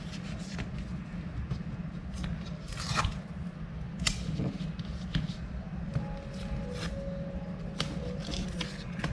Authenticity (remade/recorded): recorded